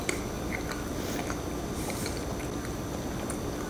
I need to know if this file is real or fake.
real